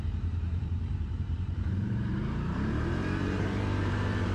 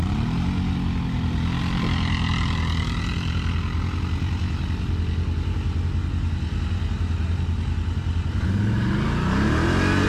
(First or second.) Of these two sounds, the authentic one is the second